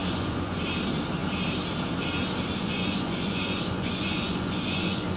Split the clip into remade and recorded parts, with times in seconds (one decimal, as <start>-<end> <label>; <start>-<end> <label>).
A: 0.0-0.6 remade; 0.6-2.6 recorded; 2.6-5.2 remade